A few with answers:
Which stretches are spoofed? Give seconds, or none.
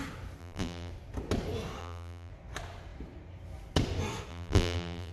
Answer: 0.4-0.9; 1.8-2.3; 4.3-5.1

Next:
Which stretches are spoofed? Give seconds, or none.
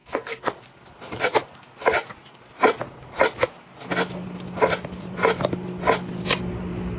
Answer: 0.0-0.5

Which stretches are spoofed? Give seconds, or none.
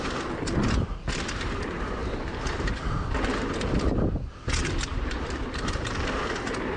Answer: none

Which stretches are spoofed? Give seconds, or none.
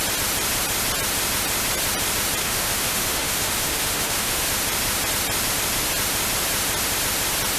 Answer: 2.4-4.4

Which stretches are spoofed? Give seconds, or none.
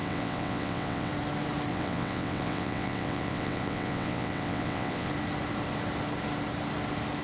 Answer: 0.0-1.1; 1.7-5.1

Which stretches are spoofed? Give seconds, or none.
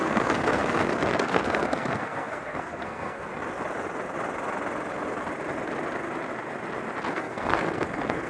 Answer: 0.0-3.3; 7.1-8.3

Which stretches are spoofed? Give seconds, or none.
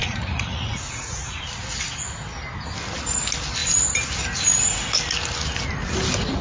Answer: 0.0-1.4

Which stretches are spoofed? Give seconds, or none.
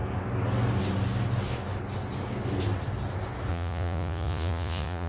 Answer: 3.5-5.1